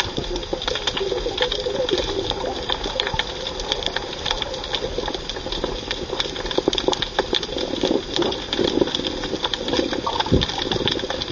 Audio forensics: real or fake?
real